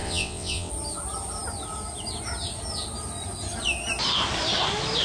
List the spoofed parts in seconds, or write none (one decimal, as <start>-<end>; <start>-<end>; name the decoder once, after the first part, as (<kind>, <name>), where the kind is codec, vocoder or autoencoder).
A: 0.0-0.7 (vocoder, WaveNeXt)